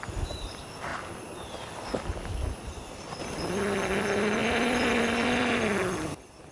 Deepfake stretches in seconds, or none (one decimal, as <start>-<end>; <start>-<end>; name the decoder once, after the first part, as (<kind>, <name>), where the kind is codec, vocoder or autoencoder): none